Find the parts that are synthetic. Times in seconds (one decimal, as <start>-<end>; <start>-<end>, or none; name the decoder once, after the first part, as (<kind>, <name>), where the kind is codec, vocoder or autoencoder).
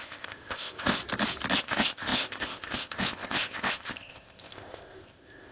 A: 0.0-1.0 (codec, ZipCodec); 1.6-5.5